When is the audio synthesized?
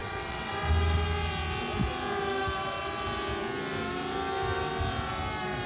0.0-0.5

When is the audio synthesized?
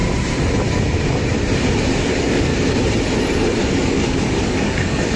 2.1-2.5; 3.6-5.2